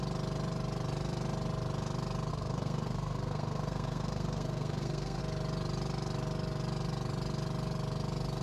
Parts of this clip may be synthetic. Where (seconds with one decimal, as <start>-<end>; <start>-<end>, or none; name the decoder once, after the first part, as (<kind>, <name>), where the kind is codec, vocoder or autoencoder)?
2.3-5.2 (codec, SNAC)